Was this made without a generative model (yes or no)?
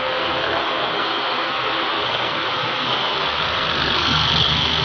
no